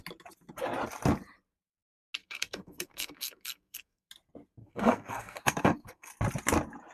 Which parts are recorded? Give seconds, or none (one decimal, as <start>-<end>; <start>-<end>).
0.0-2.2; 4.1-4.6; 6.1-6.9